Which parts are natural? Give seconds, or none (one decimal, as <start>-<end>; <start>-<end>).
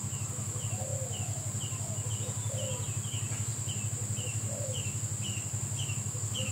0.0-6.5